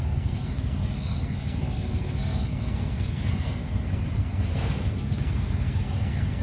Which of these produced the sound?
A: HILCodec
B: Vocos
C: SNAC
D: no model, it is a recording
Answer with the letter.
C